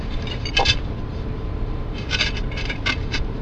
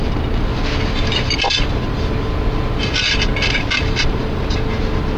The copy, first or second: first